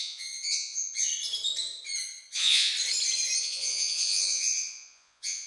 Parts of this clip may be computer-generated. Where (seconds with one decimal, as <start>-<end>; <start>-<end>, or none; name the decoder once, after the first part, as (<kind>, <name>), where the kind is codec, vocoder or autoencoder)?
0.0-1.1 (vocoder, Vocos); 2.3-2.7; 3.4-5.5